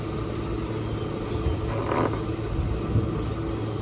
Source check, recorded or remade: recorded